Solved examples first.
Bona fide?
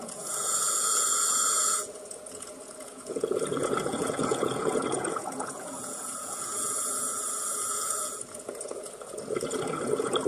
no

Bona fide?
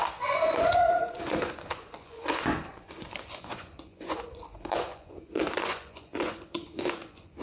no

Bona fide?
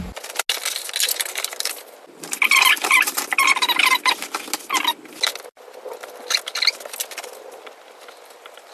yes